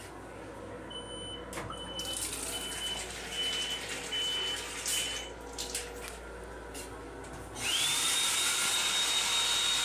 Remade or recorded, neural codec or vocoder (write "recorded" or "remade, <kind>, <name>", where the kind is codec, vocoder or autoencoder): recorded